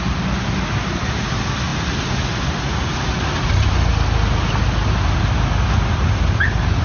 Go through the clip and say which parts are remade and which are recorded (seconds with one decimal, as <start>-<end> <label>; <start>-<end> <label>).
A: 0.0-6.8 recorded